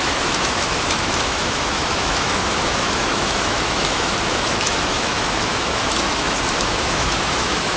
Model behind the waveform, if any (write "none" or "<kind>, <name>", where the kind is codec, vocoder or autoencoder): autoencoder, DAC-VAE